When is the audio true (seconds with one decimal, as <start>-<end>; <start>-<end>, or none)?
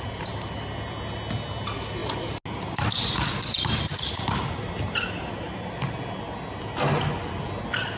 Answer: 0.0-8.0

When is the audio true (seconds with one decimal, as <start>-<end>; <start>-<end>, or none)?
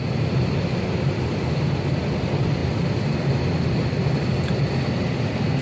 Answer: 0.0-5.6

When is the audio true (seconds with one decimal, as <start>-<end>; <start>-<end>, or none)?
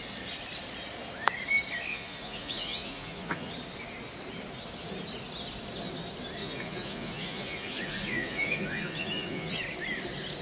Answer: 0.0-1.9; 3.5-6.4; 9.6-10.4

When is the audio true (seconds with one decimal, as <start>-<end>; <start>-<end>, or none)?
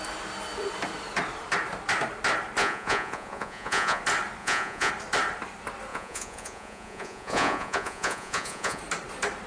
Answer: 0.0-2.6; 4.0-4.4; 4.9-5.9; 8.8-9.5